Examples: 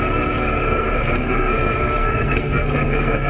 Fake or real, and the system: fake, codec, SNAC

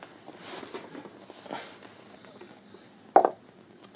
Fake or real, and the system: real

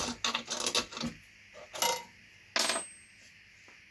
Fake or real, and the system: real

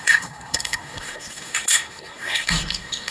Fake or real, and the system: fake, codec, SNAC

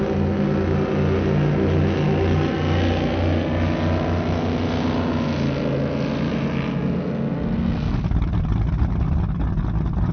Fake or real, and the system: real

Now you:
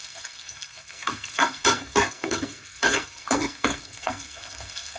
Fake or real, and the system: fake, codec, SNAC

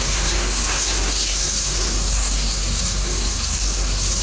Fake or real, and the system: fake, codec, SNAC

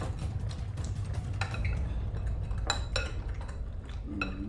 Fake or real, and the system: real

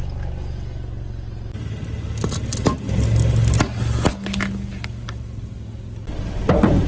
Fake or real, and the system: real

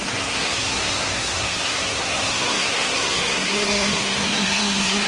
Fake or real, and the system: fake, codec, SNAC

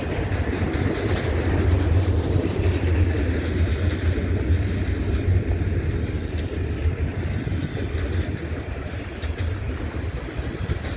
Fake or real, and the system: real